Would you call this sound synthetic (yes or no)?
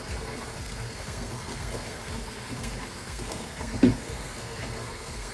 yes